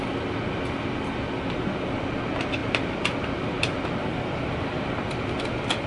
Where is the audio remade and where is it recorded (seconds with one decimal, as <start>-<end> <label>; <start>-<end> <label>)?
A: 0.0-2.6 recorded; 2.6-5.4 remade; 5.4-5.9 recorded